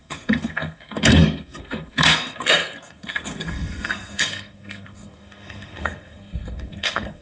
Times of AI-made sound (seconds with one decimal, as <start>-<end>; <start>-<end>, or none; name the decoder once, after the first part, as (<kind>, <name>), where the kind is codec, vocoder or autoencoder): 0.0-7.2 (codec, SNAC)